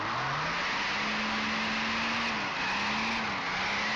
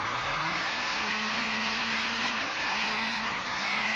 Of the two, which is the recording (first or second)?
first